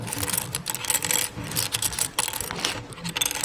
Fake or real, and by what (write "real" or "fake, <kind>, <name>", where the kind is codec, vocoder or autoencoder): real